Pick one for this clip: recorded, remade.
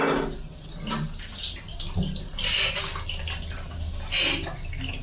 recorded